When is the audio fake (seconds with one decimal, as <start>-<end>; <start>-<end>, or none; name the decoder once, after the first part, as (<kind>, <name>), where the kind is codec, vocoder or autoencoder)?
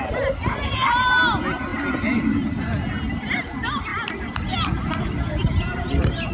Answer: none